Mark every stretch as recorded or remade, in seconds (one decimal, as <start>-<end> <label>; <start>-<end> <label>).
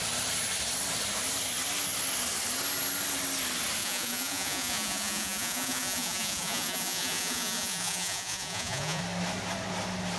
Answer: 0.0-3.8 recorded; 3.8-9.0 remade; 9.0-10.2 recorded